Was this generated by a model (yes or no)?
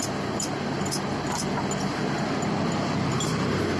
no